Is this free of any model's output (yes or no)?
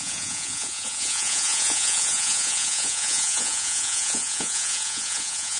no